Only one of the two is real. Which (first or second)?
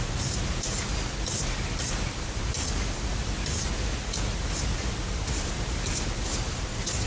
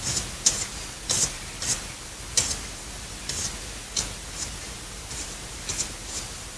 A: second